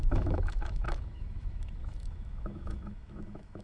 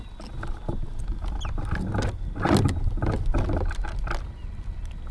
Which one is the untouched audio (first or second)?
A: second